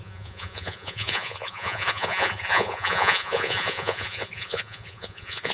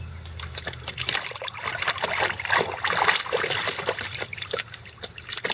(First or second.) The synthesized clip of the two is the first